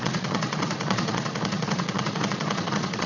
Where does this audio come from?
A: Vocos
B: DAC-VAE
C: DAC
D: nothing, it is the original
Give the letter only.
A